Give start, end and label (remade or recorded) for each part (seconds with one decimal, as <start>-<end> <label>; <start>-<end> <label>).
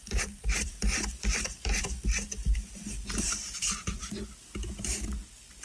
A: 0.0-3.4 remade; 3.4-5.6 recorded